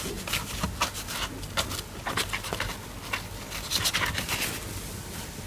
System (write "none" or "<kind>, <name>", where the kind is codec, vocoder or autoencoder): none